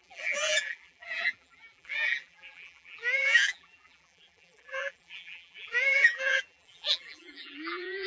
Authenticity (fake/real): fake